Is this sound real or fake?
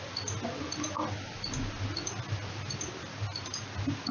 real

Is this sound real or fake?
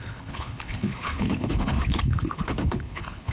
fake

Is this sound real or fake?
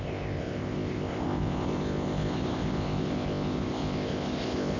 fake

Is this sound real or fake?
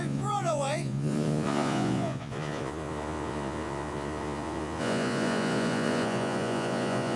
fake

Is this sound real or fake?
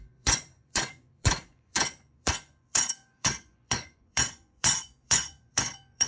fake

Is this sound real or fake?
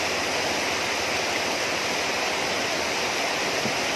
real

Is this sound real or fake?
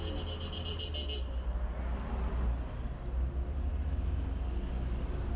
real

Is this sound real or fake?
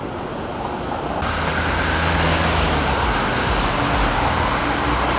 real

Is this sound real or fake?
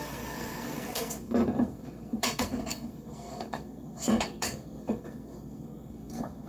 fake